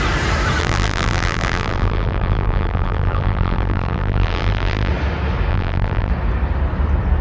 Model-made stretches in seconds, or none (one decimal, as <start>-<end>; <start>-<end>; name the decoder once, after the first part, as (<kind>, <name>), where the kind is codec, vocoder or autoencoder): 0.6-4.9 (vocoder, BigVGAN v2); 5.5-6.1

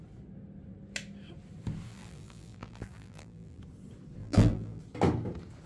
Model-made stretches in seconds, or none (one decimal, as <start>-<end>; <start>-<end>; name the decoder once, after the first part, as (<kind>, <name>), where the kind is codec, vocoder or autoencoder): 1.9-3.6 (vocoder, BigVGAN v2); 4.2-4.8

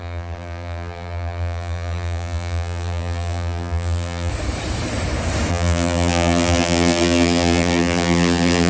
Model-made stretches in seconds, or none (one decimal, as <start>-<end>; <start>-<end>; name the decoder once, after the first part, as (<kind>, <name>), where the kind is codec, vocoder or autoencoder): 0.0-4.3 (vocoder, BigVGAN v2); 5.5-8.7